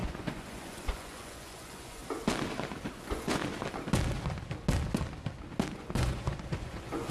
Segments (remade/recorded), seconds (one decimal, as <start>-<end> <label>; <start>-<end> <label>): 0.0-2.0 remade; 2.0-3.0 recorded; 3.0-3.4 remade; 3.4-5.7 recorded; 5.7-7.1 remade